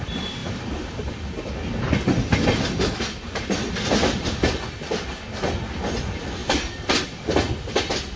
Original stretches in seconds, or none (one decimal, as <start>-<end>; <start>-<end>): 0.0-8.2